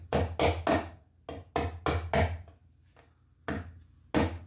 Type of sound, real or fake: real